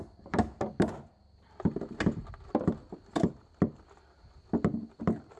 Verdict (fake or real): real